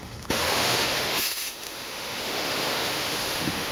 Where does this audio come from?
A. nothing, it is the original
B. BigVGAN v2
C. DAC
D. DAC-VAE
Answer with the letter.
D